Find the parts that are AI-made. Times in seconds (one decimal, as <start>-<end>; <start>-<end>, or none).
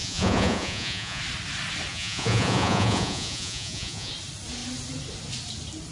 0.0-1.2; 1.9-4.1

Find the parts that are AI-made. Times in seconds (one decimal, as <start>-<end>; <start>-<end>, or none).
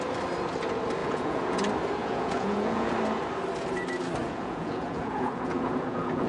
1.0-1.6; 2.0-2.9; 4.2-6.3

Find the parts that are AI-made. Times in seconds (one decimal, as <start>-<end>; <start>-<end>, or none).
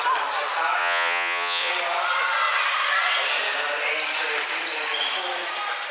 0.8-1.7